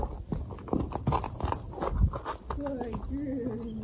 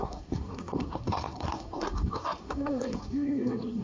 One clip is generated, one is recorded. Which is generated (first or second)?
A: second